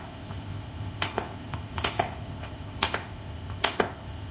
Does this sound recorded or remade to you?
remade